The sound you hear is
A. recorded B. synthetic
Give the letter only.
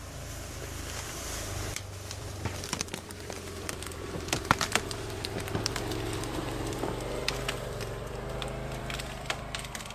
B